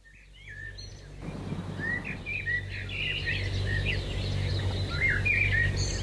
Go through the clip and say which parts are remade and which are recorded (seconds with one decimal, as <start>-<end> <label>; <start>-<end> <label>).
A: 0.0-6.0 recorded

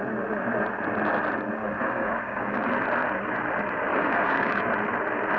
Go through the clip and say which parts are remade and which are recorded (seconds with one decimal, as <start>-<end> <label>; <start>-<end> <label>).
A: 0.0-1.8 recorded; 1.8-2.7 remade; 2.7-3.9 recorded; 3.9-4.7 remade; 4.7-5.4 recorded

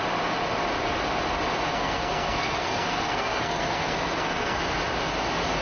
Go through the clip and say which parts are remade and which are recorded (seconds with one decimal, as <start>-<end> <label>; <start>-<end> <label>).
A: 0.0-1.7 recorded; 1.7-4.6 remade; 4.6-5.6 recorded

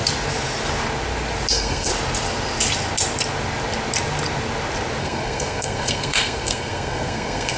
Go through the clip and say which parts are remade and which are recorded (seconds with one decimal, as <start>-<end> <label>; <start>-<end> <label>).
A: 0.0-1.5 recorded; 1.5-1.9 remade; 1.9-5.0 recorded; 5.0-7.6 remade